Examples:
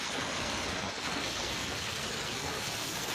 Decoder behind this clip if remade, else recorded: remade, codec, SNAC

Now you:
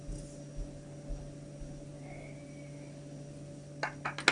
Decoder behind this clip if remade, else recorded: recorded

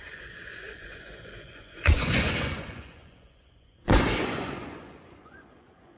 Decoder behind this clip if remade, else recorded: remade, vocoder, Vocos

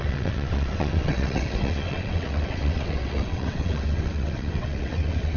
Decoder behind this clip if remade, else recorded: remade, vocoder, WaveNeXt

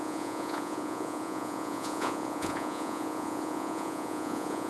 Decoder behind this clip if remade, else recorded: remade, vocoder, Vocos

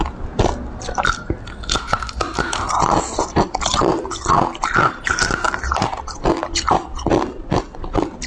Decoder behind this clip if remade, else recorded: recorded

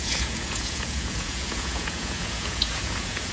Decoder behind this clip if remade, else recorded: remade, vocoder, Vocos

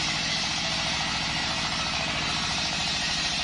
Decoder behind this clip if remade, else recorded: remade, vocoder, BigVGAN v2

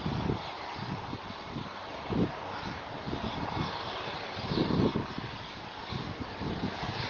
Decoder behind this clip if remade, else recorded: recorded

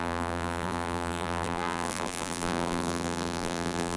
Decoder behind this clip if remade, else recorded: remade, vocoder, BigVGAN v2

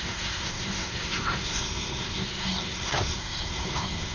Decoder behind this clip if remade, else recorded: remade, codec, SNAC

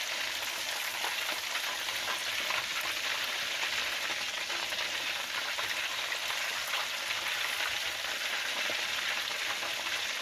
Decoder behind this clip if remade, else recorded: recorded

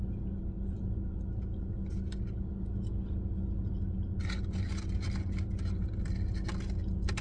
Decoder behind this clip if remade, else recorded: recorded